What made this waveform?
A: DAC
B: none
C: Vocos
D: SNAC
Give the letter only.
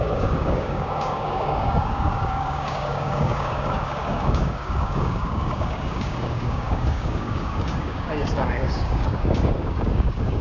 A